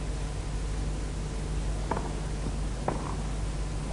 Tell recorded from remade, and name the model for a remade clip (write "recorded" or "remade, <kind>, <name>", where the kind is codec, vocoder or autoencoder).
recorded